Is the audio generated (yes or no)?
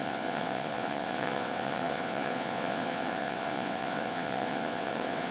yes